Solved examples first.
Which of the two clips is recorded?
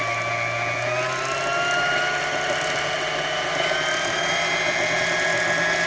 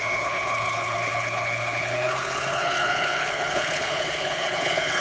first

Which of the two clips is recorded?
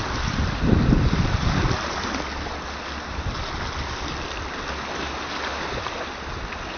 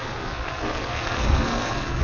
first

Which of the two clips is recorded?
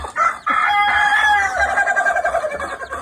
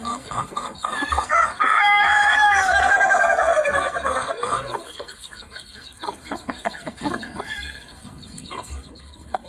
first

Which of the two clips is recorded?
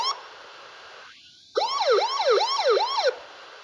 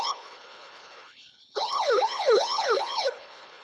first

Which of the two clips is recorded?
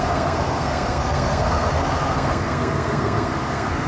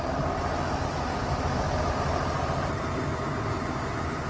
second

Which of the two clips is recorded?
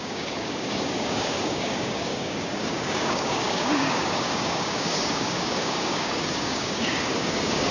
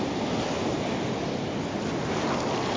second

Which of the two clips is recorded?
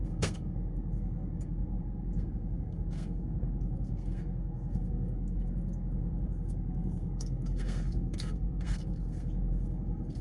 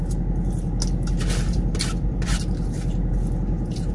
second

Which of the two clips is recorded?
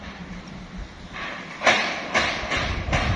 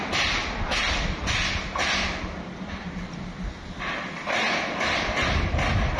second